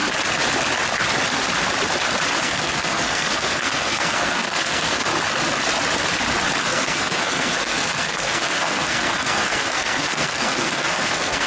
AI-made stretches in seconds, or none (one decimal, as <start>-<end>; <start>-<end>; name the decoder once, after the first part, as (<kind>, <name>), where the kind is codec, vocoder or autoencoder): 2.4-5.1 (codec, SNAC); 6.6-11.5